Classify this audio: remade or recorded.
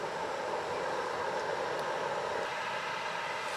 recorded